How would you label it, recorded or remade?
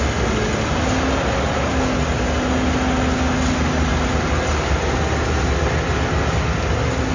recorded